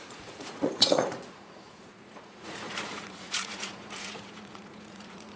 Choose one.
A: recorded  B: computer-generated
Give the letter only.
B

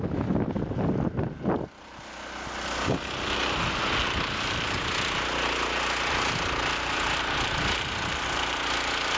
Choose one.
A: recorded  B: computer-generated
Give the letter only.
A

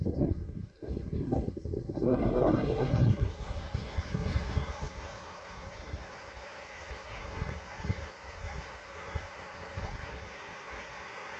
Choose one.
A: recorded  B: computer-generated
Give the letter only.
B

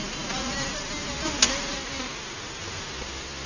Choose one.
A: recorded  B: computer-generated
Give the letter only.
A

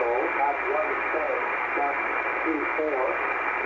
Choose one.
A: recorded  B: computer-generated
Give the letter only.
A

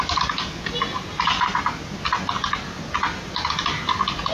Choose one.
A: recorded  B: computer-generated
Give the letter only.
A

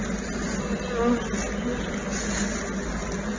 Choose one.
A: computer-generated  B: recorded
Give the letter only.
B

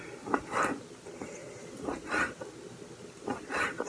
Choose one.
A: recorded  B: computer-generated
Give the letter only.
A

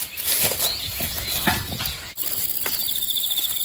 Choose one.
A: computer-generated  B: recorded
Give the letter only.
B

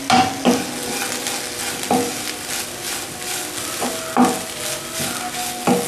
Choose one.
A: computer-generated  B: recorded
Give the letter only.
B